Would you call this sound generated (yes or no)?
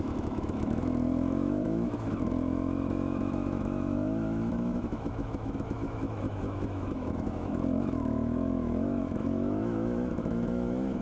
yes